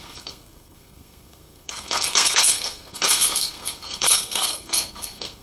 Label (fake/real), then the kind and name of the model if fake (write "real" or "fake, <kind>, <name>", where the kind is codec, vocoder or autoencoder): fake, codec, SNAC